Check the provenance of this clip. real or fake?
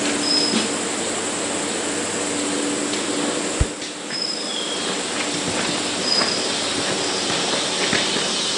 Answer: real